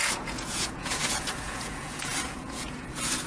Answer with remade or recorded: remade